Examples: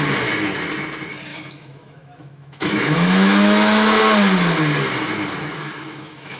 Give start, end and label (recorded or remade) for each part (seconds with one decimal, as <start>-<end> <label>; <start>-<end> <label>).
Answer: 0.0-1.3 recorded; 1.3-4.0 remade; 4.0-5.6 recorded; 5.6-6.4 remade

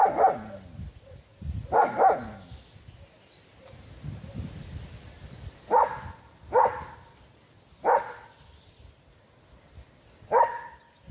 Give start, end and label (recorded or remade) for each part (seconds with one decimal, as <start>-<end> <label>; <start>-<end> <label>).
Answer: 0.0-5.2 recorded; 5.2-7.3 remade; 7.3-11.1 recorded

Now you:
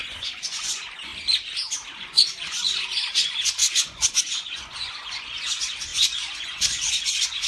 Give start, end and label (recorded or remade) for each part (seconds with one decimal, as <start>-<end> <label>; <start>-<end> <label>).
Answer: 0.0-1.1 remade; 1.1-2.0 recorded; 2.0-7.5 remade

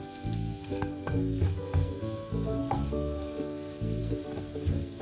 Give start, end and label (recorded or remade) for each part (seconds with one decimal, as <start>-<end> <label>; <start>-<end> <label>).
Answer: 0.0-5.0 remade

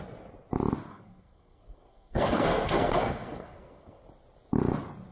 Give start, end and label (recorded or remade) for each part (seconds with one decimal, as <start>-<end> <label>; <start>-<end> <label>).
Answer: 0.0-0.9 recorded; 0.9-4.0 remade; 4.0-5.1 recorded